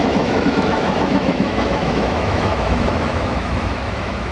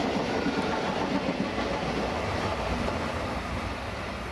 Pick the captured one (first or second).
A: second